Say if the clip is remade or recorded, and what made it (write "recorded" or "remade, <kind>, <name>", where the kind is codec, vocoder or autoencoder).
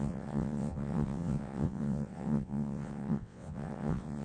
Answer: remade, vocoder, WaveNeXt